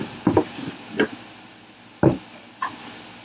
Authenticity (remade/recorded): recorded